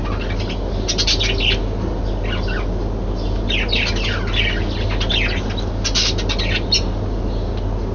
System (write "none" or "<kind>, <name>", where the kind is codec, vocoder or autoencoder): none